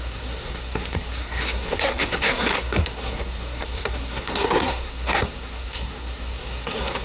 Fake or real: fake